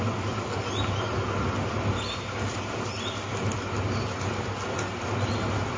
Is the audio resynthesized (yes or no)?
no